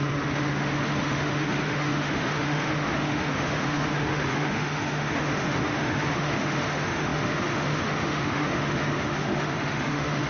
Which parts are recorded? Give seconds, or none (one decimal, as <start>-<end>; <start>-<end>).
none